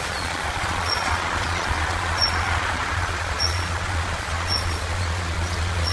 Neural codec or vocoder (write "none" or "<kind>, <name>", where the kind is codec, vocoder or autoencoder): vocoder, Vocos